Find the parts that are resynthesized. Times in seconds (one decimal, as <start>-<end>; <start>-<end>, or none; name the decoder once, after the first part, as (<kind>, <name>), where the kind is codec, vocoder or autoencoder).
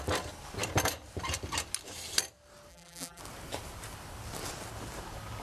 2.7-3.2 (vocoder, BigVGAN v2)